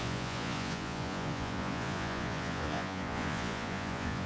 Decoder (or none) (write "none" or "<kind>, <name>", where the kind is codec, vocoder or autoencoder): vocoder, Vocos